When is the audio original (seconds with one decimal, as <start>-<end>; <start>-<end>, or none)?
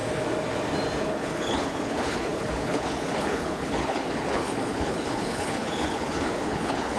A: 0.0-1.0